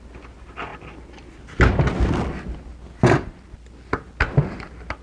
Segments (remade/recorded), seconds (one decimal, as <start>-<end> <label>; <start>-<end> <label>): 0.0-5.0 recorded